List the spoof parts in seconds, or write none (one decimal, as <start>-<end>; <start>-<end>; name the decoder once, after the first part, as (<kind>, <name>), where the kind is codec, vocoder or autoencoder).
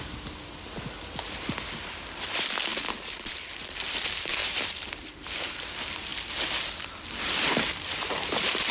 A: 4.4-5.1 (vocoder, BigVGAN v2)